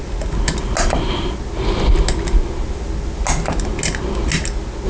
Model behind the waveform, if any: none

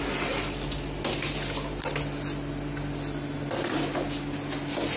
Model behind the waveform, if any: none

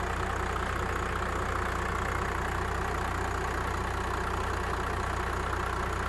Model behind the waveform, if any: none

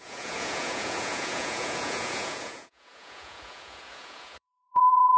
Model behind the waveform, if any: vocoder, Vocos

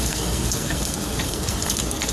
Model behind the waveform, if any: codec, SNAC